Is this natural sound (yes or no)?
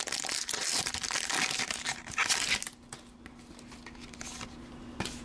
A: yes